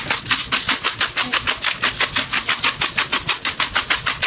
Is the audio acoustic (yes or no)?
yes